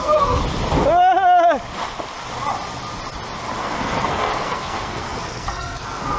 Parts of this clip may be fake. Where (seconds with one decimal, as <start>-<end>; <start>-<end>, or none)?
0.0-0.4; 3.6-6.2